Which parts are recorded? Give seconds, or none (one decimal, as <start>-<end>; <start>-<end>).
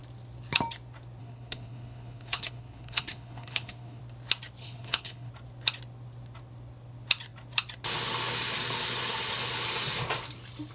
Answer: 0.0-1.2; 4.0-4.6; 5.3-10.7